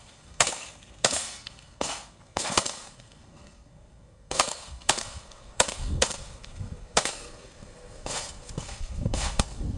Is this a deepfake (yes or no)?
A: yes